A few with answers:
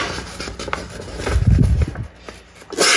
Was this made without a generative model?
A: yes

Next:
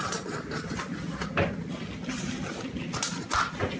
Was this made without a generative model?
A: yes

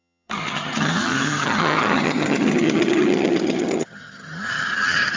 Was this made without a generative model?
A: no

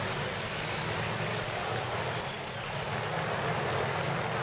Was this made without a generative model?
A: yes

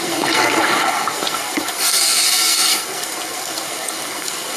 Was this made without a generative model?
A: no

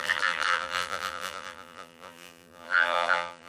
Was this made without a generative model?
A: no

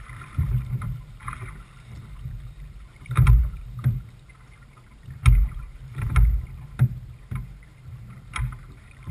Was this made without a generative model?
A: no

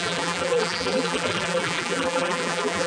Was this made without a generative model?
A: no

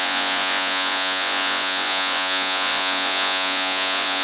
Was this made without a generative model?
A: no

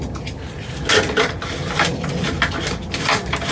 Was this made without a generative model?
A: yes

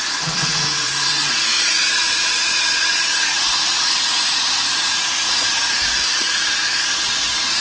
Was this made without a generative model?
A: no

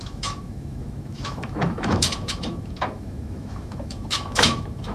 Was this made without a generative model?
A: no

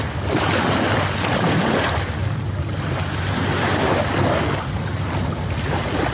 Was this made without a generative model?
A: yes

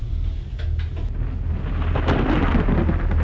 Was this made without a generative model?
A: yes